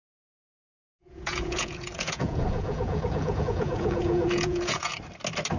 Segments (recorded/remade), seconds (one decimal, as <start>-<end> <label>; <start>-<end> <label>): 0.0-4.9 remade; 4.9-5.6 recorded